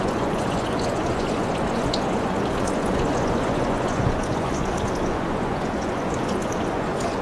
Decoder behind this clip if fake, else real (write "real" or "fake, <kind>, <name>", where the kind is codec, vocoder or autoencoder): fake, vocoder, Vocos